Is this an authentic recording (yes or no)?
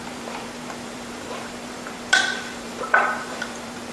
no